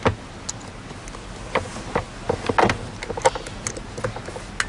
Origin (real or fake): real